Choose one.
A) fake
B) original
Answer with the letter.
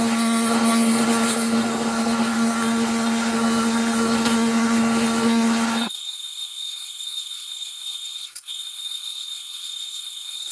A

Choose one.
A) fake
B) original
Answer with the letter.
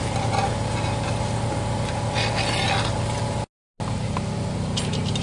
B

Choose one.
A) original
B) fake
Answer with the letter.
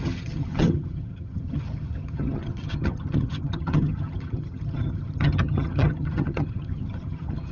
B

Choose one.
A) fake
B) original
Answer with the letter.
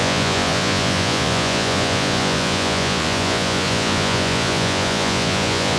A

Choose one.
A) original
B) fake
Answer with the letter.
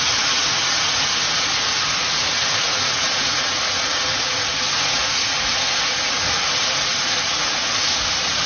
B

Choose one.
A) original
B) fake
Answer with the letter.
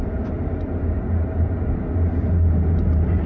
A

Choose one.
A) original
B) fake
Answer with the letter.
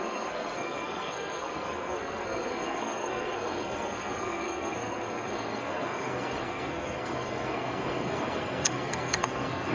B